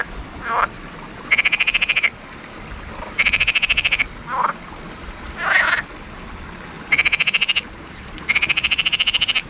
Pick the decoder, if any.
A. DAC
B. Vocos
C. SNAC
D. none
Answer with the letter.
D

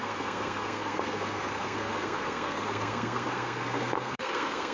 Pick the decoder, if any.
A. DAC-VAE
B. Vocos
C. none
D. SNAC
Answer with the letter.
D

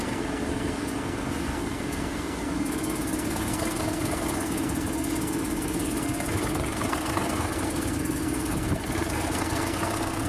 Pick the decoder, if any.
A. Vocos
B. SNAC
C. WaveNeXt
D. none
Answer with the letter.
B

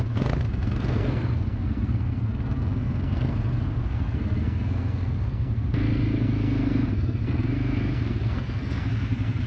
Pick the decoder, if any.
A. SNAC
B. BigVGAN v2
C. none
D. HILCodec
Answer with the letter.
A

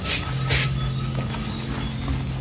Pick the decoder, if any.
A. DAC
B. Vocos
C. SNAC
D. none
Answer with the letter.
D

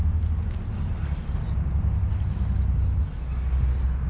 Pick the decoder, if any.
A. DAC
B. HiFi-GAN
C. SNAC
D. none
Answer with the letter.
D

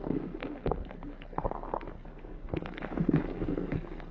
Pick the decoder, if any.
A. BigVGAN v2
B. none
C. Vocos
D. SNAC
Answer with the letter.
D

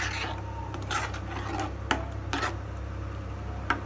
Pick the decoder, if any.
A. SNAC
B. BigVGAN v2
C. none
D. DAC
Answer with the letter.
C